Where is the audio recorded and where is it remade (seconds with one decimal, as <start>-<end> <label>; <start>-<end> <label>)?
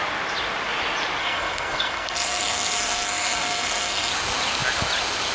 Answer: 0.0-1.2 recorded; 1.2-4.1 remade; 4.1-5.3 recorded